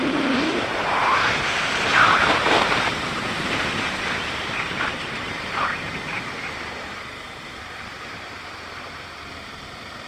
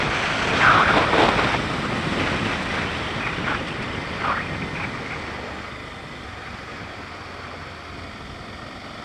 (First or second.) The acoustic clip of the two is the second